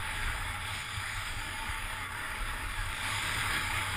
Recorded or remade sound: remade